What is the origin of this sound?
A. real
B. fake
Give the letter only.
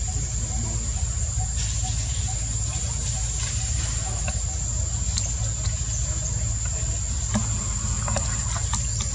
A